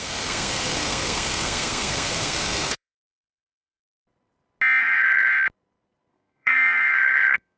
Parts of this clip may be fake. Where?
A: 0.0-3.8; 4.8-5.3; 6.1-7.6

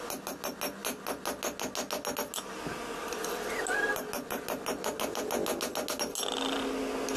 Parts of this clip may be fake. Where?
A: none

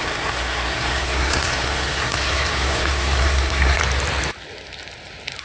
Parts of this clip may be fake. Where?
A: 0.0-3.8

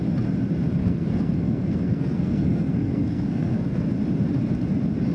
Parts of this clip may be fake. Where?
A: 0.8-3.9